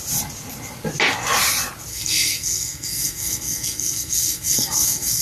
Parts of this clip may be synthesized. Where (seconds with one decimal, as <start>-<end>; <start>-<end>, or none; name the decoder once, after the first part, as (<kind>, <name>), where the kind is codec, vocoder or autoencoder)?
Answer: 1.9-5.2 (codec, SNAC)